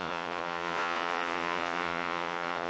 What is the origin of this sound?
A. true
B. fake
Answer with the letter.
B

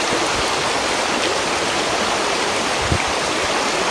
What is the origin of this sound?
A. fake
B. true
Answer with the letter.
B